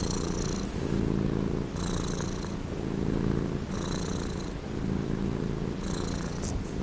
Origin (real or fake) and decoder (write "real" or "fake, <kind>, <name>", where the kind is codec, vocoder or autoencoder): real